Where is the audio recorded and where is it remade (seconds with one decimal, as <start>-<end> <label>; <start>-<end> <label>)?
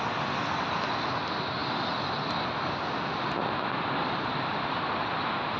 0.0-5.6 recorded